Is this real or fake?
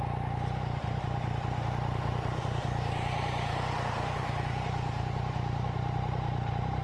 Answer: fake